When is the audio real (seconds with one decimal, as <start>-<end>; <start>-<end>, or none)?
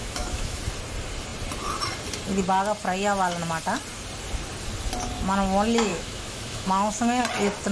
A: 0.6-5.9; 7.2-7.7